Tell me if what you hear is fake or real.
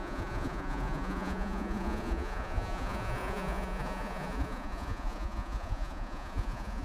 fake